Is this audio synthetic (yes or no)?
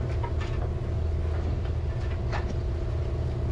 no